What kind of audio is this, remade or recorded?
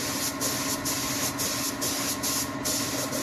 recorded